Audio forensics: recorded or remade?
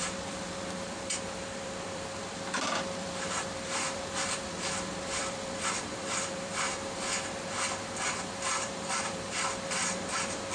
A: remade